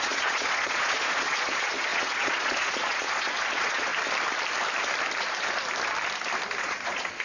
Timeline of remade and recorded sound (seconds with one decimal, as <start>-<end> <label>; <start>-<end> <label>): 0.0-3.9 remade; 3.9-6.6 recorded; 6.6-7.2 remade